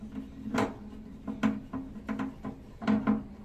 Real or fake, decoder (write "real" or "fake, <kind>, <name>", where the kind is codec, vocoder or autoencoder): real